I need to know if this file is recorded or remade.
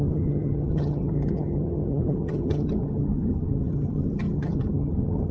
remade